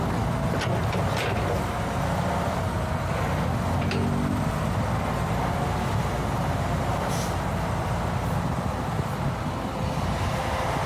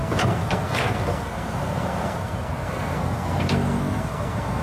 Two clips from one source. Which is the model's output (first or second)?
second